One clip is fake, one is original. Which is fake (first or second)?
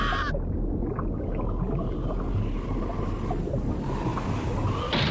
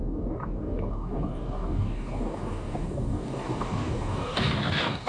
second